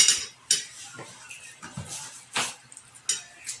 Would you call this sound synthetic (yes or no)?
no